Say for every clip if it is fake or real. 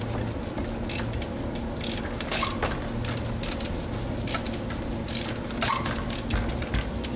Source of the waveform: real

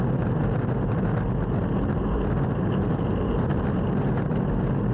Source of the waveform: real